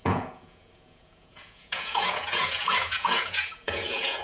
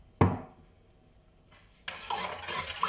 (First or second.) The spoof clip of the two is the first